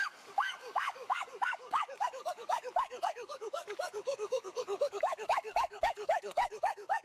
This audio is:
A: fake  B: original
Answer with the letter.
A